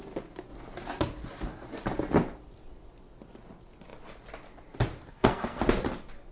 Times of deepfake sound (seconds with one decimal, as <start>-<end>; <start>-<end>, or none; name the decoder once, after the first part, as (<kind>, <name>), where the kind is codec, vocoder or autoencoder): 5.1-5.6 (codec, SNAC)